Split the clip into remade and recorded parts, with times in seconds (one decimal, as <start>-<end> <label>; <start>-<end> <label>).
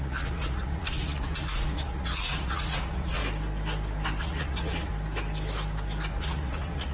0.0-3.2 remade; 3.2-4.2 recorded; 4.2-4.9 remade; 4.9-6.1 recorded; 6.1-6.9 remade